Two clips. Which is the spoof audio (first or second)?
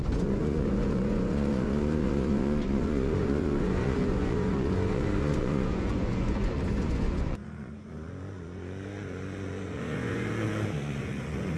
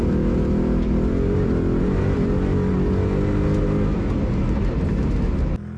first